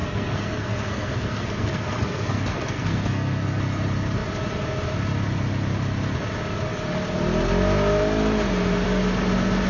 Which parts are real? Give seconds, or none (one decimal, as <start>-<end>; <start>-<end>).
3.6-9.7